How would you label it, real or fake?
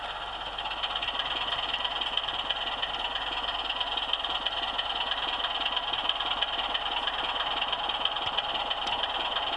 real